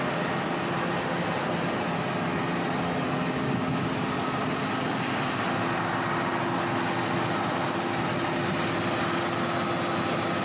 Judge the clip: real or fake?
real